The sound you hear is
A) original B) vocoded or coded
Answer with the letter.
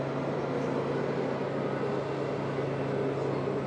A